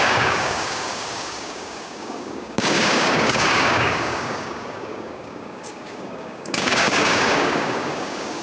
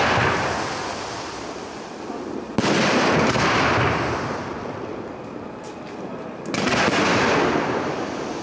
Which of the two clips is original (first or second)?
second